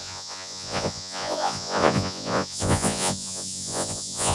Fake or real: fake